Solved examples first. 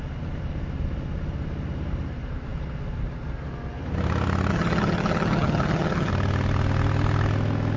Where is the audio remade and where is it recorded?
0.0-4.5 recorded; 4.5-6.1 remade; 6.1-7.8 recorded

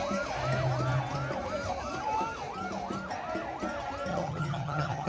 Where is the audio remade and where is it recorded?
0.0-4.1 recorded; 4.1-5.1 remade

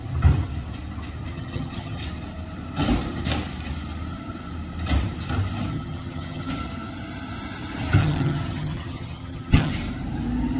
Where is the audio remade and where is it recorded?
0.0-1.3 recorded; 1.3-2.0 remade; 2.0-5.7 recorded; 5.7-6.5 remade; 6.5-8.0 recorded; 8.0-9.7 remade; 9.7-10.6 recorded